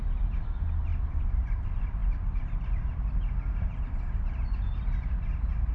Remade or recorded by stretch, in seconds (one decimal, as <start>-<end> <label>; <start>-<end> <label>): 0.0-5.7 recorded